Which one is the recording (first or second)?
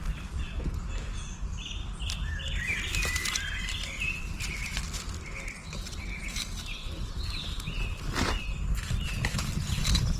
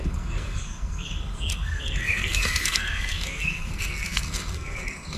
first